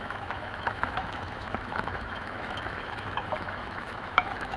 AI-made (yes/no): yes